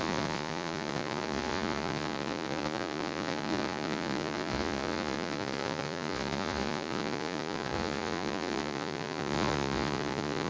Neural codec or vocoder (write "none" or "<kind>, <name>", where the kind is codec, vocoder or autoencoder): vocoder, Vocos